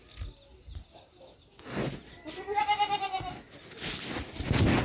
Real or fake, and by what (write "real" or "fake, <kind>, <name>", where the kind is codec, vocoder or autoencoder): real